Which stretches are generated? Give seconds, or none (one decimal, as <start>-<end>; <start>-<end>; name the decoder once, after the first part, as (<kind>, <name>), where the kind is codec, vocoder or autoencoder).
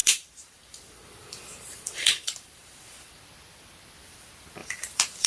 0.0-3.2 (vocoder, BigVGAN v2); 4.6-5.3